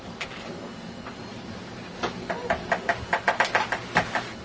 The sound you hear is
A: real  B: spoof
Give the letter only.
A